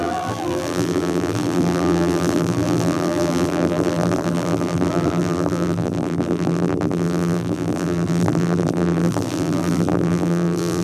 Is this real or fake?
fake